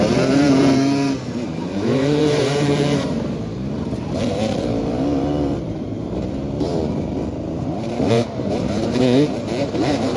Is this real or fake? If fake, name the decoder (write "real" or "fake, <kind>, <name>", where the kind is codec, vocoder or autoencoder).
fake, vocoder, BigVGAN v2